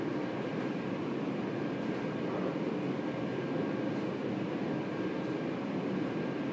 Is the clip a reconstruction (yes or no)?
no